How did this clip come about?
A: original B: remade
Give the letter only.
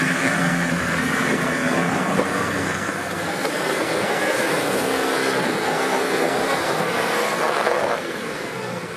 B